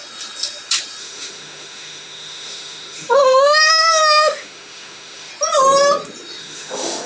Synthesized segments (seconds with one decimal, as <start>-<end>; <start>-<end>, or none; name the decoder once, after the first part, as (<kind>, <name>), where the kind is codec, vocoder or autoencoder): 1.0-5.3 (autoencoder, DAC-VAE); 6.4-7.1